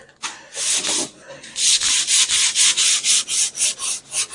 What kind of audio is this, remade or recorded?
recorded